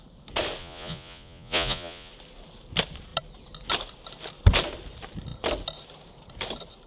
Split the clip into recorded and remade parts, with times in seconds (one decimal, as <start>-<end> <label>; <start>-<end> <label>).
0.0-0.6 recorded; 0.6-2.1 remade; 2.1-6.9 recorded